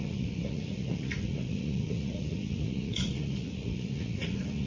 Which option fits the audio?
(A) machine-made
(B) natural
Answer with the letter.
A